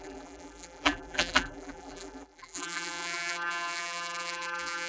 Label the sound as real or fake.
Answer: fake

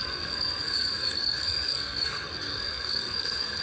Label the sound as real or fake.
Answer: fake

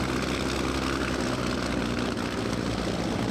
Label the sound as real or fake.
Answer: real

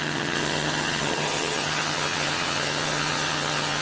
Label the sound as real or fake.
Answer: fake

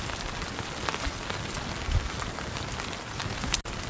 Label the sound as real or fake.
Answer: real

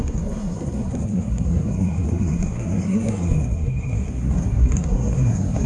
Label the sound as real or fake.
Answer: fake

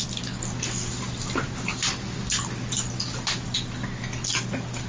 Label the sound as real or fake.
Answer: real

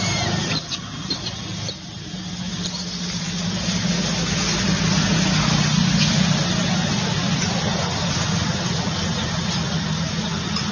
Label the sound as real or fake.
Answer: real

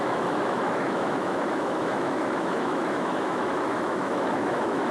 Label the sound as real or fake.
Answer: fake